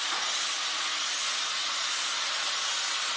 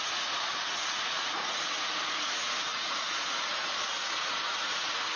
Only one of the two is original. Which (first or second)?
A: first